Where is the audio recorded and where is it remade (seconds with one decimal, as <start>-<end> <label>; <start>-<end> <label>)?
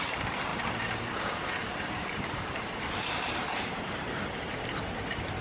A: 0.0-5.4 remade